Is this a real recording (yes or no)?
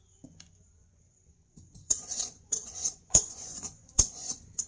no